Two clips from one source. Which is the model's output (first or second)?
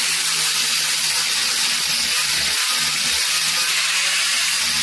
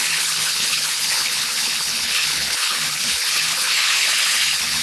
second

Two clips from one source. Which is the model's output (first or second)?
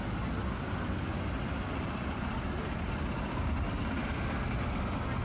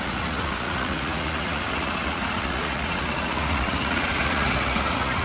second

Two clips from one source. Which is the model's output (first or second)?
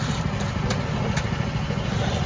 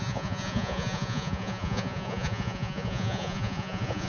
second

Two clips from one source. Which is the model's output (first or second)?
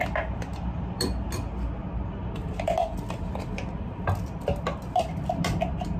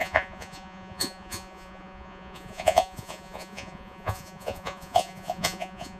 second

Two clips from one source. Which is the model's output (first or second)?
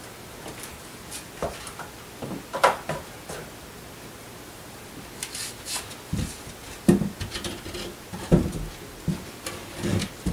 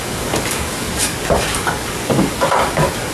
second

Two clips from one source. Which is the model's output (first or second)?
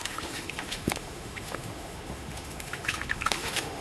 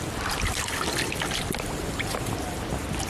first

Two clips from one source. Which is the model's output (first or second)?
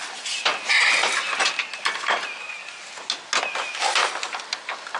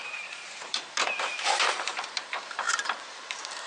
second